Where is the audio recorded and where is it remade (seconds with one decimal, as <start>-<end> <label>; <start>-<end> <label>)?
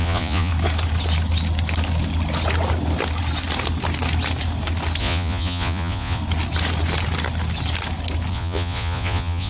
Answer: 0.0-0.5 remade; 0.5-5.0 recorded; 5.0-6.2 remade; 6.2-8.3 recorded; 8.3-9.5 remade